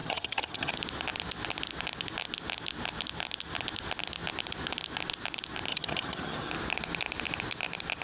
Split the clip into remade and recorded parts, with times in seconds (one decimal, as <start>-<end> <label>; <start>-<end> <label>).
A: 0.0-0.7 remade; 0.7-5.7 recorded; 5.7-6.5 remade; 6.5-8.0 recorded